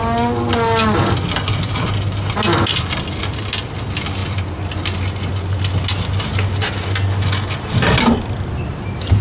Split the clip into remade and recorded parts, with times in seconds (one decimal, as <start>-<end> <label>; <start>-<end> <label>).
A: 0.0-9.2 recorded